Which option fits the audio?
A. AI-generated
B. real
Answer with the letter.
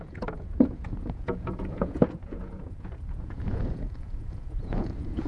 A